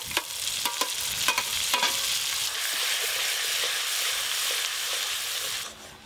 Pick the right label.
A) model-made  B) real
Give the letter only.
B